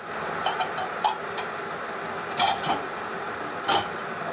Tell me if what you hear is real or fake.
real